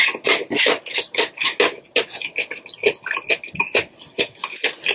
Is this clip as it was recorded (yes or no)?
yes